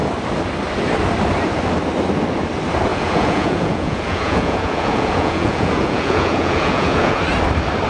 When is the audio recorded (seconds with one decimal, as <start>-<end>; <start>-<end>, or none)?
0.0-2.9; 7.2-7.9